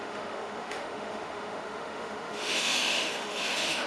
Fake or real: fake